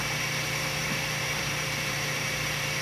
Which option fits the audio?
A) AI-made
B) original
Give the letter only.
A